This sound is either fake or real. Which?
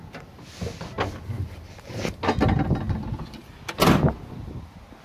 real